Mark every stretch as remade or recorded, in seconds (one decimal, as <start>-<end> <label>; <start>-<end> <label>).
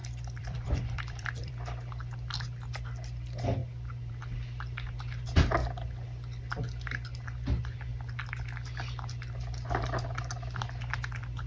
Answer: 0.0-1.5 remade; 1.5-11.5 recorded